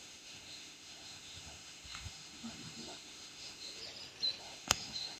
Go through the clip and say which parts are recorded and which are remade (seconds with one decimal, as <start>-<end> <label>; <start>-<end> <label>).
0.0-3.8 remade; 3.8-4.4 recorded; 4.4-5.2 remade